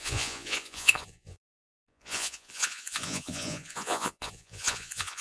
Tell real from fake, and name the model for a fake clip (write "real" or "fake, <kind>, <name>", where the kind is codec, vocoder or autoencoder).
fake, vocoder, Vocos